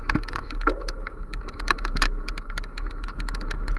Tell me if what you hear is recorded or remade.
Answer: remade